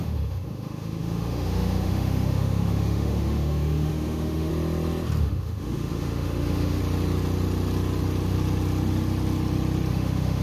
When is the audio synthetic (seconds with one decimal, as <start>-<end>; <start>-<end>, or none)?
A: 0.0-4.5; 5.2-6.8; 9.9-10.4